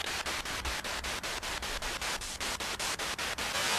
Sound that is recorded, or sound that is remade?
remade